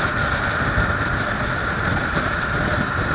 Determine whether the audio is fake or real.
real